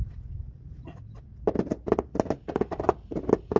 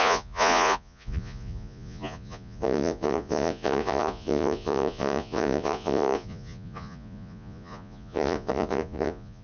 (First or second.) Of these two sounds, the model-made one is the second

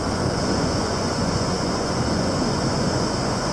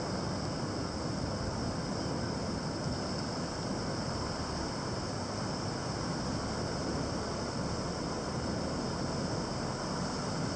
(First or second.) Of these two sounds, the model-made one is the first